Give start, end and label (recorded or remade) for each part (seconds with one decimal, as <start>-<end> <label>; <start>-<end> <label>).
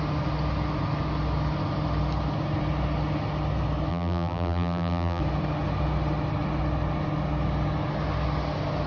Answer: 0.0-3.9 recorded; 3.9-5.2 remade; 5.2-8.9 recorded